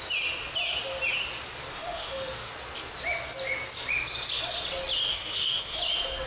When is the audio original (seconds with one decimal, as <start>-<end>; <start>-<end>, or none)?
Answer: 0.0-1.7; 2.5-5.1; 5.8-6.3